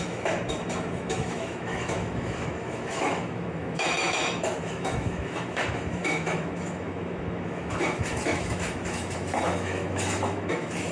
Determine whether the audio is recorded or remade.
remade